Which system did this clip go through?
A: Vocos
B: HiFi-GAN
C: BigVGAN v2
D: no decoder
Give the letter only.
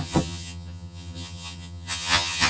B